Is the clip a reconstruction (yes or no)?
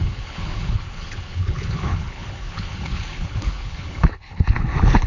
yes